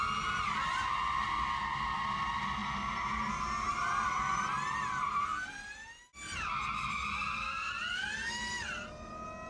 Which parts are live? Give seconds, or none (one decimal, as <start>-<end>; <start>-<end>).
0.0-9.5